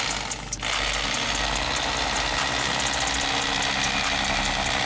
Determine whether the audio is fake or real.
real